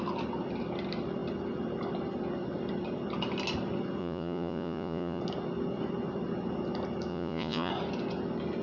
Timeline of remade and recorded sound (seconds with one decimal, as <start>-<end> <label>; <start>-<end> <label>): 0.0-4.0 recorded; 4.0-5.2 remade; 5.2-7.1 recorded; 7.1-7.7 remade; 7.7-8.6 recorded